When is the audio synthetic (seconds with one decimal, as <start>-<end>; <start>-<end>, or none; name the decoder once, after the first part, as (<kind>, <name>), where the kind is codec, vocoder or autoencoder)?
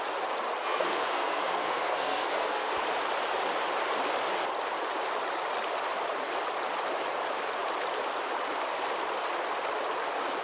0.6-2.7 (codec, SNAC)